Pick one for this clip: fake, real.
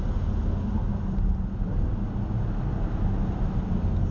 real